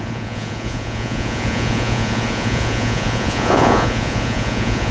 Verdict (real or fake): fake